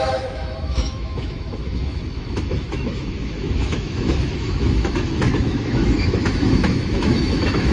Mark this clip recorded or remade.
remade